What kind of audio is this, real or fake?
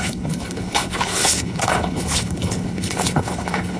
fake